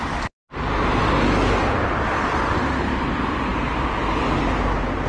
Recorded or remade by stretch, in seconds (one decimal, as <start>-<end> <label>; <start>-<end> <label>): 0.0-5.1 recorded